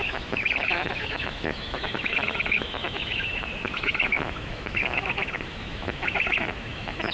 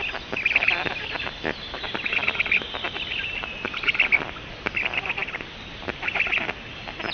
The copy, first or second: first